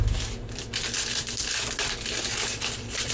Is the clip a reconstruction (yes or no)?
yes